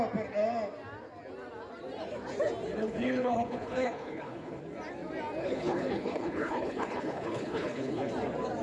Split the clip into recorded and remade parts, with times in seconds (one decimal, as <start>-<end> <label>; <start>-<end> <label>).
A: 0.0-2.8 recorded; 2.8-4.6 remade; 4.6-5.4 recorded; 5.4-8.1 remade; 8.1-8.6 recorded